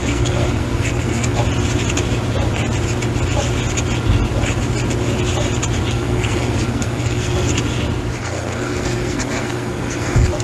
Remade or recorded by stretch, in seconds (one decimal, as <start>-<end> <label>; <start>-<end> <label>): 0.0-1.4 remade; 1.4-5.9 recorded; 5.9-7.5 remade; 7.5-8.2 recorded; 8.2-10.4 remade